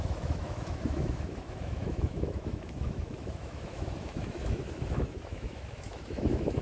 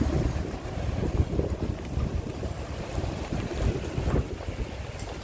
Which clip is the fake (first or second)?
first